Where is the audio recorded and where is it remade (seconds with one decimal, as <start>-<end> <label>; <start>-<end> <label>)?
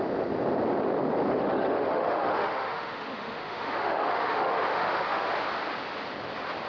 0.0-1.3 recorded; 1.3-5.3 remade; 5.3-6.7 recorded